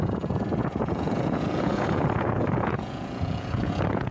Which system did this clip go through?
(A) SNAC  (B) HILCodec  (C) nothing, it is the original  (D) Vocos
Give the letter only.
D